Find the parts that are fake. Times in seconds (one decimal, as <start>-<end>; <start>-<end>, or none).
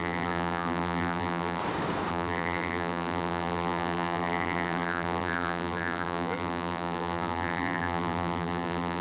0.0-1.6; 2.1-9.0